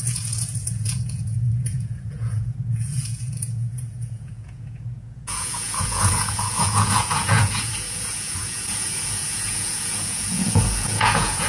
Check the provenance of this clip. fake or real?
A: fake